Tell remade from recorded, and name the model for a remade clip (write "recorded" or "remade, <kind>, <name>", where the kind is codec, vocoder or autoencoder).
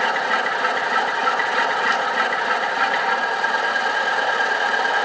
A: recorded